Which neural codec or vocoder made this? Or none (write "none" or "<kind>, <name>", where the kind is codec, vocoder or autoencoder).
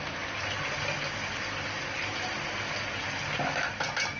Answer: none